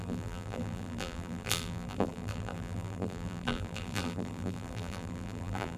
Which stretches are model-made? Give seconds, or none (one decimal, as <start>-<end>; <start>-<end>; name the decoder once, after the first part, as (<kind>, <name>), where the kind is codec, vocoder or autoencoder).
0.0-5.8 (vocoder, BigVGAN v2)

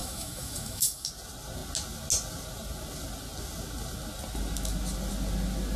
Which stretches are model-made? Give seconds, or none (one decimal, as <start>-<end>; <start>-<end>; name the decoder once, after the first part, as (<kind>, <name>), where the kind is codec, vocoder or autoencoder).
0.0-1.1 (autoencoder, DAC-VAE)

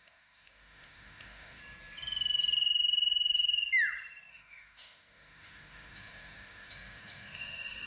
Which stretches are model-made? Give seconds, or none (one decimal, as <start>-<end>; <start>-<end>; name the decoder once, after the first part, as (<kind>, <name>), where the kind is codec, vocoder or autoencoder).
0.0-1.6 (autoencoder, DAC-VAE); 4.3-7.9

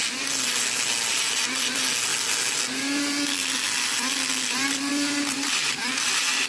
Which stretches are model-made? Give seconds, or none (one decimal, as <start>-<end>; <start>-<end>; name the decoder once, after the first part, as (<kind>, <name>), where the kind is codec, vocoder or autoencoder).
none

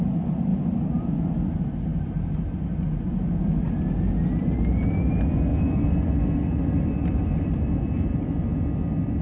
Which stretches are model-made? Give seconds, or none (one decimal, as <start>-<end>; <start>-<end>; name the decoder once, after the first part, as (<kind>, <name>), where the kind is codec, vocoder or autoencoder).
0.0-1.9 (vocoder, BigVGAN v2); 4.7-9.2